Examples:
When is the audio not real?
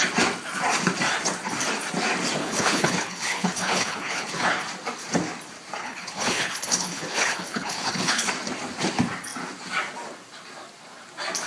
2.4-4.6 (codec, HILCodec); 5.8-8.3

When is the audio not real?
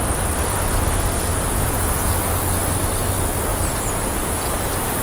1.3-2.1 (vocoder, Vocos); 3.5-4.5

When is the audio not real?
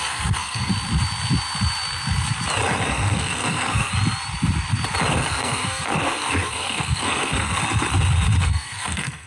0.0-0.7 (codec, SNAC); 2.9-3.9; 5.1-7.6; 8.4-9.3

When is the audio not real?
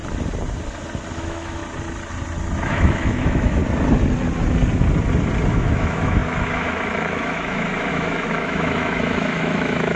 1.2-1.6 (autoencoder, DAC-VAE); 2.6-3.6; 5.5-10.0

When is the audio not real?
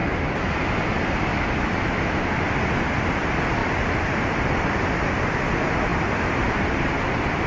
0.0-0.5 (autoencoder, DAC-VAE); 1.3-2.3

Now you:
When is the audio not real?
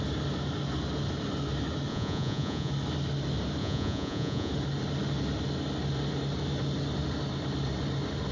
1.9-2.7 (vocoder, Vocos); 3.6-4.5